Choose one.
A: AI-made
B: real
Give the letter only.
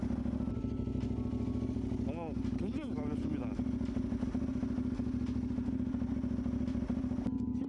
B